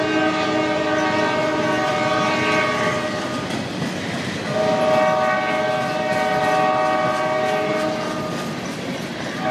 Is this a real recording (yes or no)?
yes